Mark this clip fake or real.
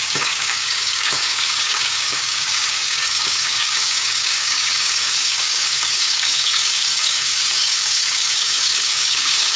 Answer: fake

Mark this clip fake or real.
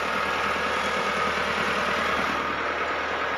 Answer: real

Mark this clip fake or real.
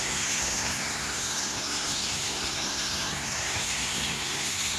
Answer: fake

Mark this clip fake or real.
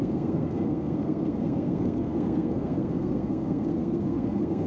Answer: fake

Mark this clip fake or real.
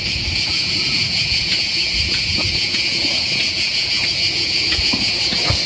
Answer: fake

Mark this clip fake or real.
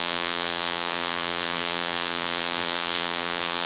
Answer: fake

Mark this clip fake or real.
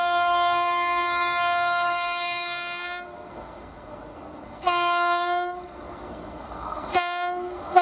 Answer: fake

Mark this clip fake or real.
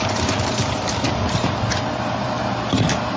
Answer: fake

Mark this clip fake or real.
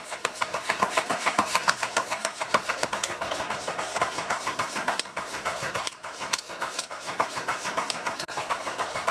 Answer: fake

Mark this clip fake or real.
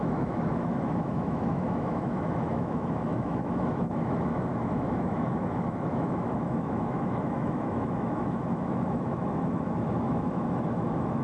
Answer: fake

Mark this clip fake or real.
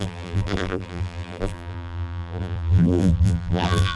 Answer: fake